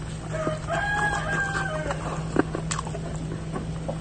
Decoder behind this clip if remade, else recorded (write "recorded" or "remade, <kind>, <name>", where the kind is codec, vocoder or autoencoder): recorded